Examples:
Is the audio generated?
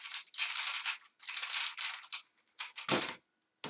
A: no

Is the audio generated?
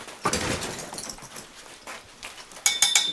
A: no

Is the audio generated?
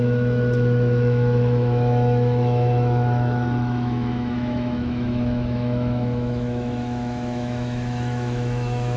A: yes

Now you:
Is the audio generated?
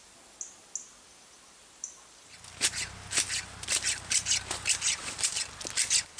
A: no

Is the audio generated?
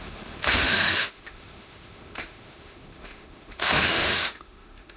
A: yes